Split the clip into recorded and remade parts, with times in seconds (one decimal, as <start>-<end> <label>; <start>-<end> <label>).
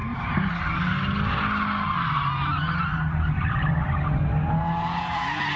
0.0-5.6 recorded